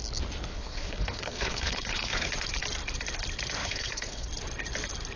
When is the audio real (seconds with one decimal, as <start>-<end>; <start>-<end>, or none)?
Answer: 0.0-0.5; 2.3-3.6; 4.3-5.2